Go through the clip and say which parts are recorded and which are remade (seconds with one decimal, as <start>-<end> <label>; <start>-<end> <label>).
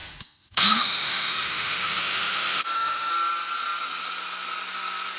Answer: 0.0-3.1 remade; 3.1-5.2 recorded